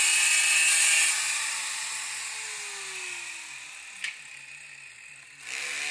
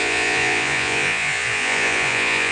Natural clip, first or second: first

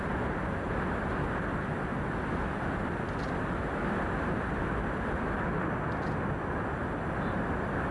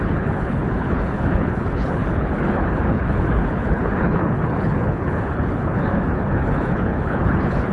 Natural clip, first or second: first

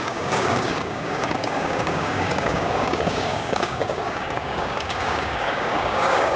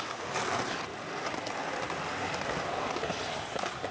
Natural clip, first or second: second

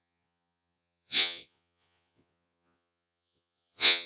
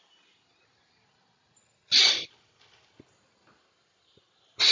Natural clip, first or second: second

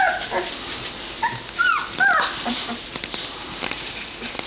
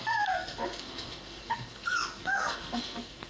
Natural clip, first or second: first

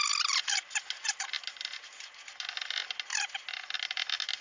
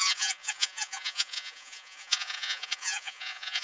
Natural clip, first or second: first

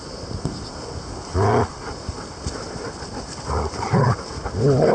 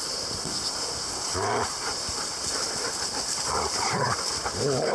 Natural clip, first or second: first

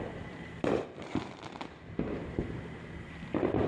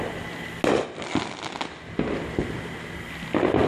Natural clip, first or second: second